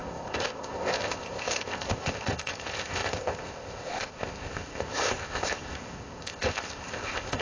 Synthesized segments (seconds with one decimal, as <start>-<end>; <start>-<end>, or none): 0.0-7.4